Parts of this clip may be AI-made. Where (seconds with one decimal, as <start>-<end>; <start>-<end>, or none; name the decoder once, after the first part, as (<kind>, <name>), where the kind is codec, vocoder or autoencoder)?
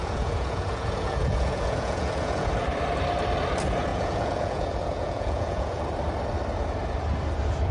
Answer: 0.0-2.5 (vocoder, Vocos); 3.9-5.8